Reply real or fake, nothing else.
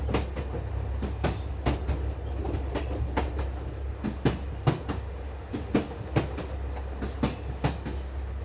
real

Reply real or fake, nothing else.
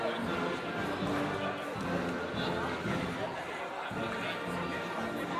real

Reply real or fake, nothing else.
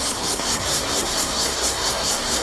fake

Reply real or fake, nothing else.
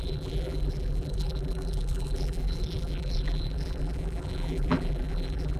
fake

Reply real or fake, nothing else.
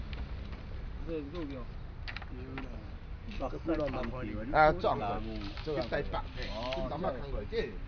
real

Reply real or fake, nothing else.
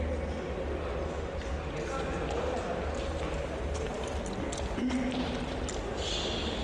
real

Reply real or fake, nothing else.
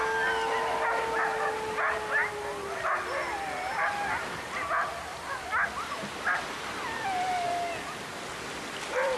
real